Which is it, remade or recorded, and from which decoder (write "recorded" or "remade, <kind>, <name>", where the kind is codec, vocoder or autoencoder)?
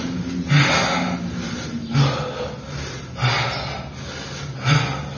recorded